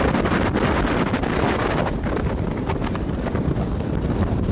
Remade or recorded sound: remade